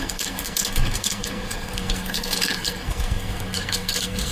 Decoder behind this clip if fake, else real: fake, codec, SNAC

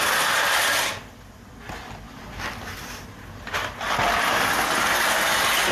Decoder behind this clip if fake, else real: real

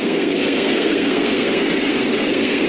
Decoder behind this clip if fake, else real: fake, codec, SNAC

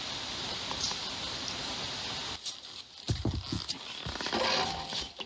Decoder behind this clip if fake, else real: real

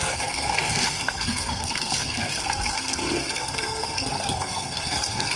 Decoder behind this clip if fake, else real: fake, codec, SNAC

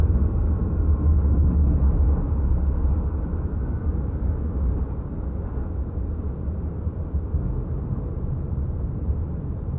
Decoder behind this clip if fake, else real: real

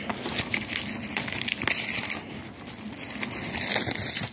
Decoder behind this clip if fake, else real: real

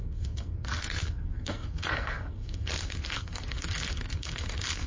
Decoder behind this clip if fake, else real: fake, codec, SNAC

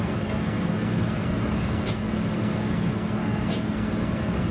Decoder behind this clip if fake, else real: fake, codec, SNAC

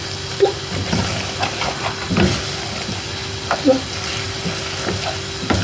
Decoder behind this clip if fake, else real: real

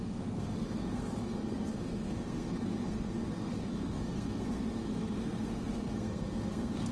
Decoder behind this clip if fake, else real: fake, codec, SNAC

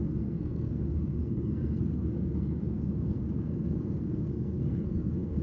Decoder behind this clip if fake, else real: fake, codec, SNAC